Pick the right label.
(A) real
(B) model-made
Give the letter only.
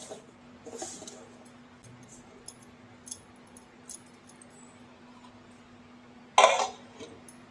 A